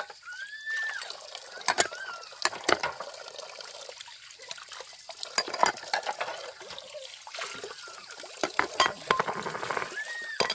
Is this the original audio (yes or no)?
yes